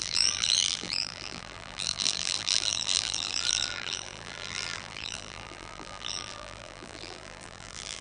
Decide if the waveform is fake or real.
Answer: fake